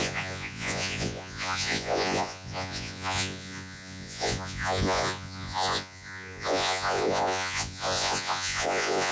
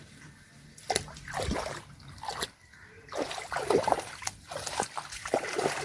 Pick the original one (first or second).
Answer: second